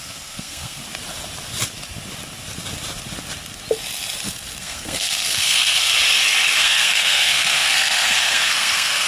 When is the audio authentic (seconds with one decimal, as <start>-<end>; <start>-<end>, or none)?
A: 0.8-4.6; 5.9-6.6

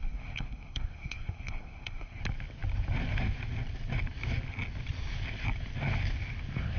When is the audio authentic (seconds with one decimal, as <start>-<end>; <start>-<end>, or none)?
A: 2.2-6.8

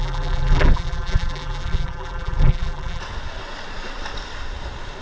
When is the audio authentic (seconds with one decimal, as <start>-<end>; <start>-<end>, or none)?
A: 3.0-5.0

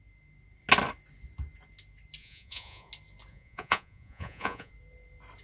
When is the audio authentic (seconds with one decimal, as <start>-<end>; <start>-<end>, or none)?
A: 0.0-2.2; 2.9-3.3; 4.7-5.4